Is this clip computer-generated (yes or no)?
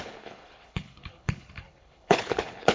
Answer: yes